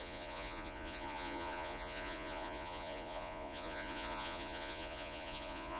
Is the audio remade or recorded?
remade